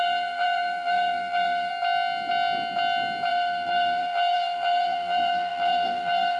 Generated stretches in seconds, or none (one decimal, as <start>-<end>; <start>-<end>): 0.0-1.7; 3.3-6.4